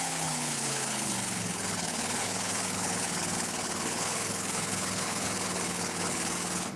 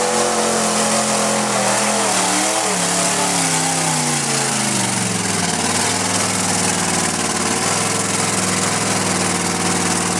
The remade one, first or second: first